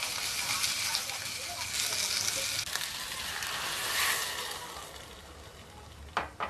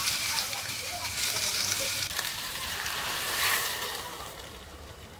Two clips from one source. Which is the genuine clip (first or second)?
first